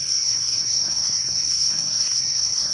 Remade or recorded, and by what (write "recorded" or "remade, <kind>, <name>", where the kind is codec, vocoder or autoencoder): remade, codec, SNAC